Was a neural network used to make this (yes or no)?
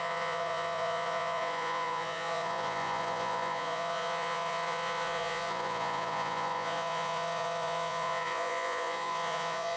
yes